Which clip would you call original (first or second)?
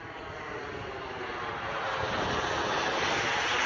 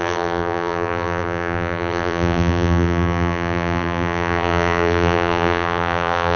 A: first